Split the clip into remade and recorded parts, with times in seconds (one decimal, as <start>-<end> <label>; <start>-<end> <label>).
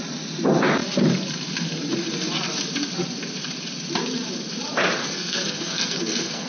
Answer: 0.0-5.0 recorded; 5.0-6.5 remade